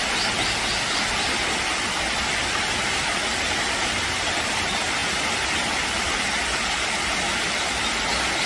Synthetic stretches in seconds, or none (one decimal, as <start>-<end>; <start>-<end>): none